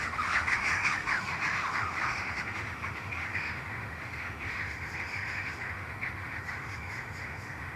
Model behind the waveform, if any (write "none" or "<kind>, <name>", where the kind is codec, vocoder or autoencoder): autoencoder, DAC-VAE